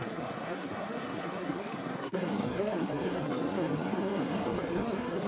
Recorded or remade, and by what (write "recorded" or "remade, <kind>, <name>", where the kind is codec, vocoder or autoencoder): remade, codec, SNAC